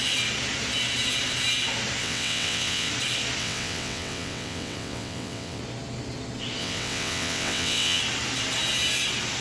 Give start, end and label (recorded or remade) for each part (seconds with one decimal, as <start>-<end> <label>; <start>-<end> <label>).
0.0-2.0 recorded; 2.0-2.9 remade; 2.9-3.4 recorded; 3.4-5.6 remade; 5.6-6.6 recorded; 6.6-8.0 remade; 8.0-9.4 recorded